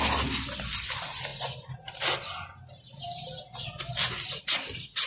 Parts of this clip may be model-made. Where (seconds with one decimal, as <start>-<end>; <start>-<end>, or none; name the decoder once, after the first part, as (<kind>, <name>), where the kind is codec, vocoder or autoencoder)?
none

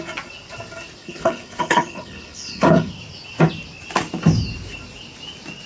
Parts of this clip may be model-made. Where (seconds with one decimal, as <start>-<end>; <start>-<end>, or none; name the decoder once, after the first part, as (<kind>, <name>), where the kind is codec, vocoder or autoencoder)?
1.0-2.9 (codec, HILCodec)

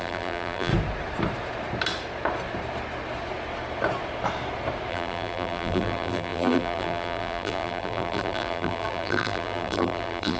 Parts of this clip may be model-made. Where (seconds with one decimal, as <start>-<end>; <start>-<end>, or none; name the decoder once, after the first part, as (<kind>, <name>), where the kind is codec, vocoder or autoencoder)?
0.0-0.7 (vocoder, BigVGAN v2); 4.9-10.4

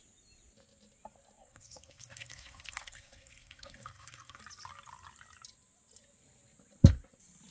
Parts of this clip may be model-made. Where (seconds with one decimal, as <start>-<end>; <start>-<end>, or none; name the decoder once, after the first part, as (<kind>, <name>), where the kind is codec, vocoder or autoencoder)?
1.4-4.4 (codec, SNAC)

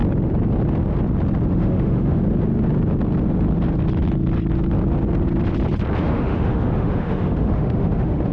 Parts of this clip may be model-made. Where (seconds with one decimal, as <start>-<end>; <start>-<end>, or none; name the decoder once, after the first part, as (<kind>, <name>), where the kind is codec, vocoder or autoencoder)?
1.5-2.2 (autoencoder, DAC-VAE); 6.0-8.3